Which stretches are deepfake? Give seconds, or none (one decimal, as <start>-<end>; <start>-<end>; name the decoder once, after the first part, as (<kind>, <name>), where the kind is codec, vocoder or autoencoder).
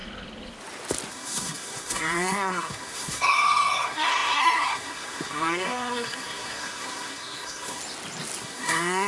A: 1.1-7.8 (codec, SNAC); 8.4-9.1